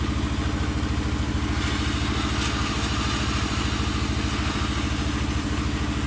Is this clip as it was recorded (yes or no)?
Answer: yes